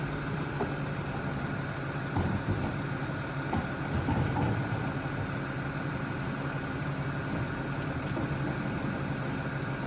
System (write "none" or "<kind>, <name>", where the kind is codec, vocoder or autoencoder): none